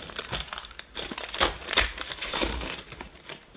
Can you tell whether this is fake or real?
fake